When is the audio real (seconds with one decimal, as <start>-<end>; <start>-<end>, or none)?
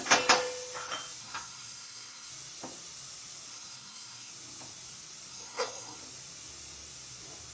0.0-1.2; 2.3-3.5; 4.3-5.3; 6.0-7.5